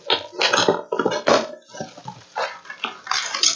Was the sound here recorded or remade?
recorded